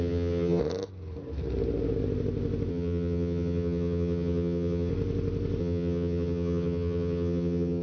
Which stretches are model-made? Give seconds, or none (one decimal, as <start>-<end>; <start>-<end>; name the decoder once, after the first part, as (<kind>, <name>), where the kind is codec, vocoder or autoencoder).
0.0-0.6 (vocoder, HiFi-GAN); 2.7-4.9; 5.6-7.8